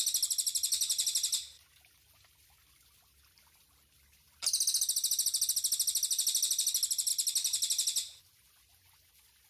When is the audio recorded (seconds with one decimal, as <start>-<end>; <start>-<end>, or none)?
0.0-9.5